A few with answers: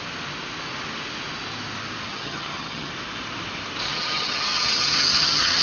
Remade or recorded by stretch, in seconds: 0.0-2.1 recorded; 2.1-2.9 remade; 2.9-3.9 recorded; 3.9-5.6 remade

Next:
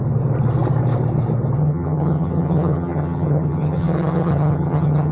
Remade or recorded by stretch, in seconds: 0.0-1.6 recorded; 1.6-5.1 remade

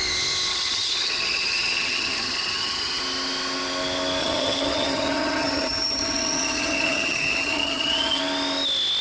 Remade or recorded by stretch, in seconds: 0.0-0.5 recorded; 0.5-3.0 remade; 3.0-4.2 recorded; 4.2-8.2 remade; 8.2-9.0 recorded